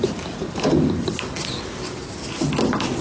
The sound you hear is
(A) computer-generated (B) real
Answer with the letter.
B